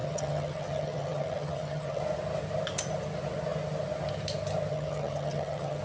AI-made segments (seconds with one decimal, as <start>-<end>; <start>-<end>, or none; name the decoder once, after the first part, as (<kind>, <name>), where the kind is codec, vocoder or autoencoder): 0.0-2.0 (vocoder, HiFi-GAN); 4.7-5.8